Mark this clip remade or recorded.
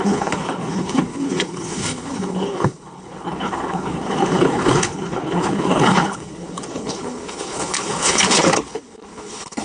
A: remade